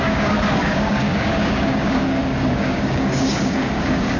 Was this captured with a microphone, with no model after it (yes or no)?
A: no